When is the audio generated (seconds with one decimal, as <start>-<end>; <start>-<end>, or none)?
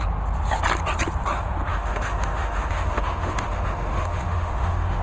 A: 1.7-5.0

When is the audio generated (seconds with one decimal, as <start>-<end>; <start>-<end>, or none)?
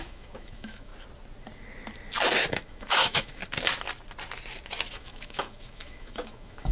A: 0.0-0.9; 2.5-3.4; 4.9-6.7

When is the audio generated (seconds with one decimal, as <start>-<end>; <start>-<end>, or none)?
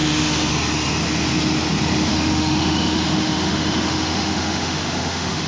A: 0.0-0.5; 2.1-5.5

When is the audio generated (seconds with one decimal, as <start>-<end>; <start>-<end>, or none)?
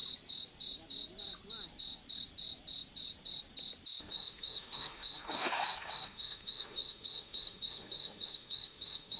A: 4.0-9.2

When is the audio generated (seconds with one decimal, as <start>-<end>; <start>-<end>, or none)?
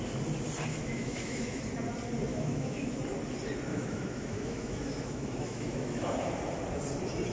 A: 0.7-1.6; 2.3-2.9; 3.7-6.1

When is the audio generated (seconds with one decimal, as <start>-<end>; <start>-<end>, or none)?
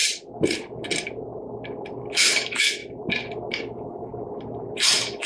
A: 2.0-2.8; 3.6-4.1; 4.8-5.3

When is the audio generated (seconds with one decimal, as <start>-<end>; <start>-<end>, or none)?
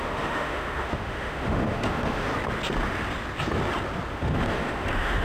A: 0.0-2.3; 4.1-5.2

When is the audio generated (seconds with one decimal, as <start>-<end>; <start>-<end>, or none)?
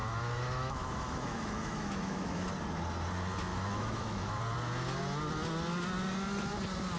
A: 0.0-2.5; 3.5-4.4